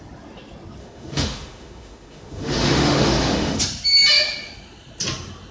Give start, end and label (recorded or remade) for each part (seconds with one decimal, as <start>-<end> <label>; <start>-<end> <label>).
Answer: 0.0-0.8 recorded; 0.8-3.6 remade; 3.6-5.5 recorded